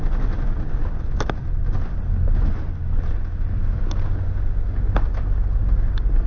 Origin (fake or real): real